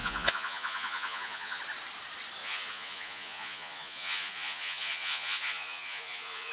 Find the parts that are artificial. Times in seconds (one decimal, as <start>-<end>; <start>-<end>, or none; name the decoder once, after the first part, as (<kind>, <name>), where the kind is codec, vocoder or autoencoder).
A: 0.0-1.6 (vocoder, Vocos); 2.4-6.5